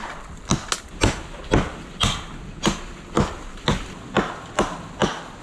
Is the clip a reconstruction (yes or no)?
no